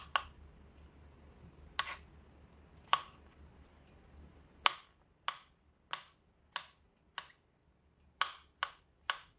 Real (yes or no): yes